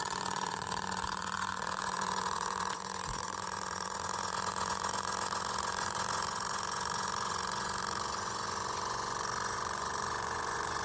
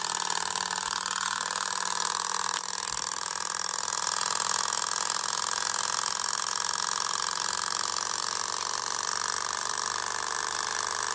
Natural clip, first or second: second